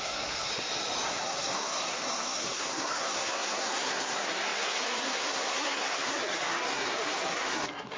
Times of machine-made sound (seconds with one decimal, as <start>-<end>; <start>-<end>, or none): 0.0-0.5; 1.1-8.0